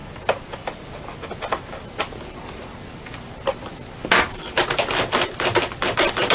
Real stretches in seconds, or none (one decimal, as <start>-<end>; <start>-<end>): 0.0-6.3